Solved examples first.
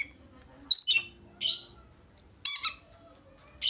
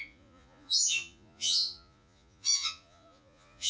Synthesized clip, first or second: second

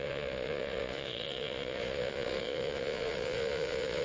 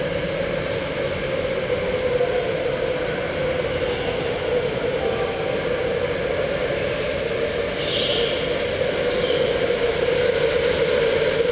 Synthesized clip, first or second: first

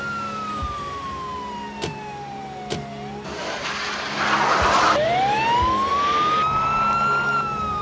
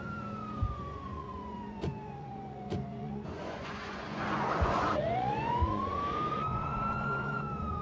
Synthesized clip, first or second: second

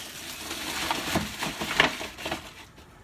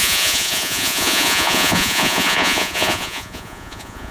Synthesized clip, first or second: second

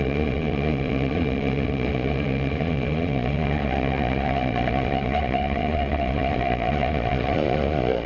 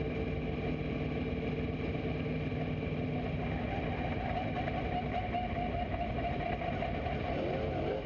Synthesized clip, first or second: first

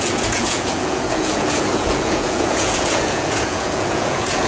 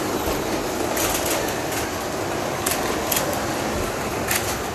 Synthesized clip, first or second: first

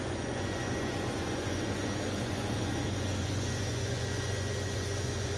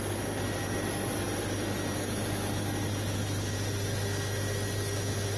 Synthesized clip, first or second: first